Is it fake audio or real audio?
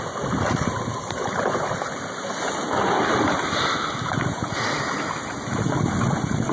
real